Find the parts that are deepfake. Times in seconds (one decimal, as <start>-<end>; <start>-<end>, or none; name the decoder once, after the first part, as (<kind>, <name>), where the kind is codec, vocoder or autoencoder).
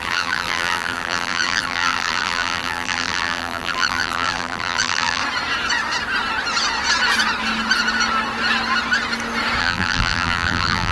0.0-5.2 (vocoder, BigVGAN v2); 9.6-10.9